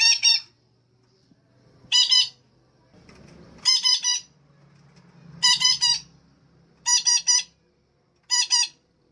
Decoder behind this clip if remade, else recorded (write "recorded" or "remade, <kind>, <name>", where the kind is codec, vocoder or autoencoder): recorded